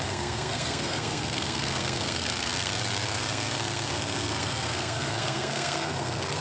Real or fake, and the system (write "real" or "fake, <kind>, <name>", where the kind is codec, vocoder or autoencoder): fake, codec, SNAC